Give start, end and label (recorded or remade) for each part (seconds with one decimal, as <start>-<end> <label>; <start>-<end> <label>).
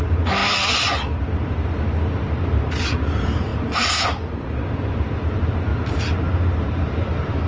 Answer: 0.0-0.4 remade; 0.4-1.2 recorded; 1.2-7.5 remade